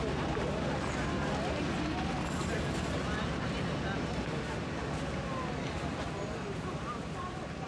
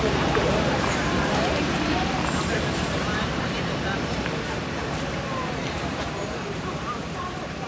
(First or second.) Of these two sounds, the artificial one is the second